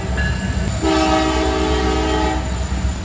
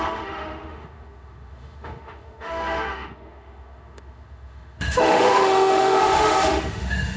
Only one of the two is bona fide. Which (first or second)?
first